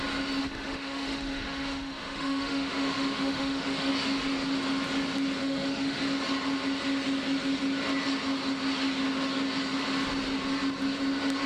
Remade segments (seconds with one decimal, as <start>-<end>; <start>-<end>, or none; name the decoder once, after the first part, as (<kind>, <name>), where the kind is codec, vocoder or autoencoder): 0.4-3.9 (autoencoder, DAC-VAE); 5.4-6.0